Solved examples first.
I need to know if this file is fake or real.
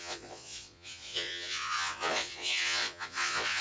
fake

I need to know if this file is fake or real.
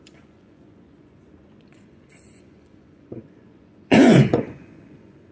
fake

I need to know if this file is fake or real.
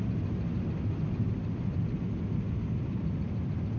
real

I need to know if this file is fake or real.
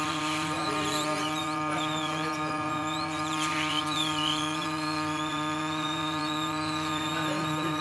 fake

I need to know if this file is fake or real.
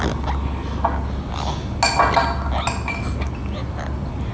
real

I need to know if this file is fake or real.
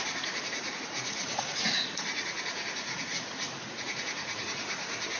fake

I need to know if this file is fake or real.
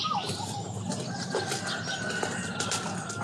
real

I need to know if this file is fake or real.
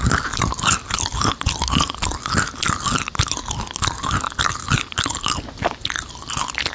real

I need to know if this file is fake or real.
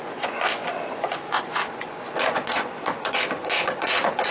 fake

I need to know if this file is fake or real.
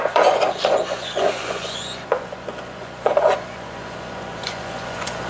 fake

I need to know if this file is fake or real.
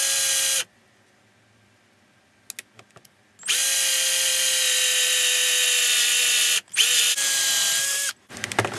real